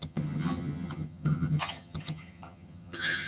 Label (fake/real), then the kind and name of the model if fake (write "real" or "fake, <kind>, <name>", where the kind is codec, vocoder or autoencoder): fake, vocoder, HiFi-GAN